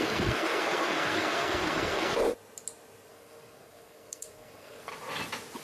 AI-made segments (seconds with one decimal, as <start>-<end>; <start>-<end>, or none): 0.0-2.2; 3.1-4.9